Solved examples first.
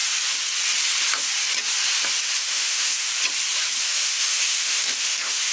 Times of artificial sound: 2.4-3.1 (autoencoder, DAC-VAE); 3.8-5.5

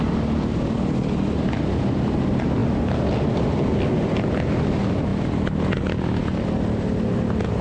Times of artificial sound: none

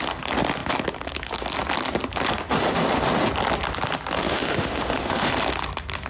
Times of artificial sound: 4.2-5.3 (autoencoder, DAC-VAE)

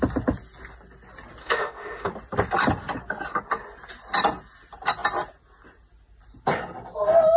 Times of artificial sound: 1.4-2.1 (autoencoder, DAC-VAE)

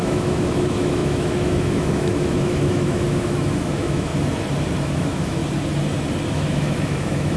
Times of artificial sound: 0.0-4.1 (autoencoder, DAC-VAE); 4.8-5.4; 6.3-7.4

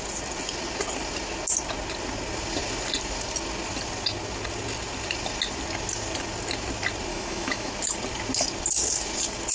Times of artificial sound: 7.1-7.7 (autoencoder, DAC-VAE)

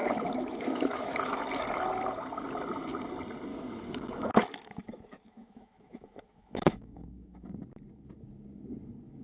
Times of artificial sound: 0.0-1.4 (autoencoder, DAC-VAE); 3.5-7.5